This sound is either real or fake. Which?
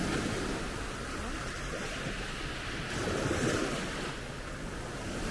real